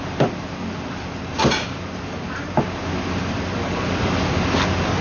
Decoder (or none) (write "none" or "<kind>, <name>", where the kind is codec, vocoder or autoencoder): none